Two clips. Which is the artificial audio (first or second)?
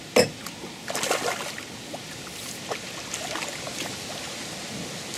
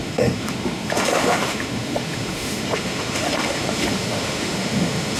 second